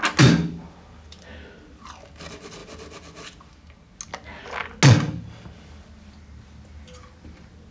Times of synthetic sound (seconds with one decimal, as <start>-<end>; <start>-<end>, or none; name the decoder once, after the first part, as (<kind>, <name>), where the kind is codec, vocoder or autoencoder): none

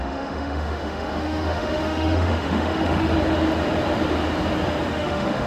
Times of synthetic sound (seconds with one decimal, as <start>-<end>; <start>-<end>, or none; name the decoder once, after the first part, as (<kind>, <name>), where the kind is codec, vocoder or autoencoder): 0.0-3.1 (autoencoder, DAC-VAE); 4.9-5.5

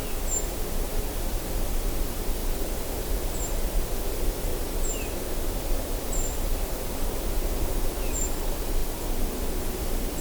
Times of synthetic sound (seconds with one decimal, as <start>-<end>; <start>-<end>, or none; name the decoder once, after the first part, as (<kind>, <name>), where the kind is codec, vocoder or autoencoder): 0.0-4.5 (vocoder, BigVGAN v2); 5.6-8.8; 9.6-10.2

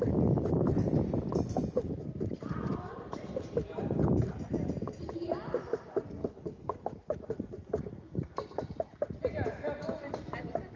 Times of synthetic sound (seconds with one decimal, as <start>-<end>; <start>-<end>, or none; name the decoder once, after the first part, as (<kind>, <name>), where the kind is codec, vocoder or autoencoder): 6.2-6.8 (codec, HILCodec)